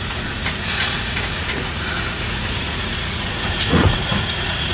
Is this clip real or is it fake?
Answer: fake